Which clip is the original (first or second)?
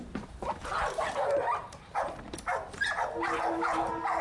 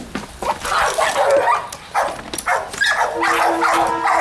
second